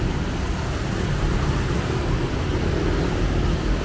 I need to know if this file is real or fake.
real